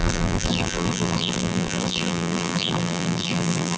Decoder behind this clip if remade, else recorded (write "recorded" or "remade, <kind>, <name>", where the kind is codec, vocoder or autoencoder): remade, vocoder, BigVGAN v2